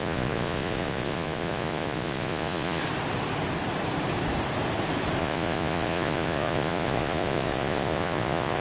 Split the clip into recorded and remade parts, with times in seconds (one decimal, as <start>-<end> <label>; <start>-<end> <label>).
0.0-2.8 remade; 2.8-5.2 recorded; 5.2-8.6 remade